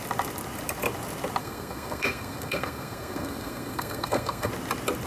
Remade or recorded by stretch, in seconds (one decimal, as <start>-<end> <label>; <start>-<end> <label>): 0.0-1.4 recorded; 1.4-4.5 remade; 4.5-5.1 recorded